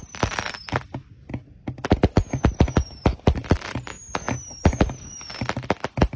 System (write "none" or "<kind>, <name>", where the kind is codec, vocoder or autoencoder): none